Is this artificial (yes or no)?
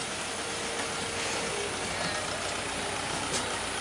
no